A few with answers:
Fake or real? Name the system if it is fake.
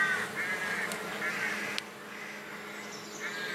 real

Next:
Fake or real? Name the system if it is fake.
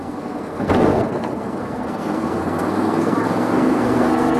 fake, codec, SNAC